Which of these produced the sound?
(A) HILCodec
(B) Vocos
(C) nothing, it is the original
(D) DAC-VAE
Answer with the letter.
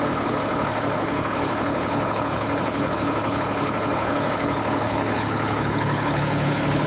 A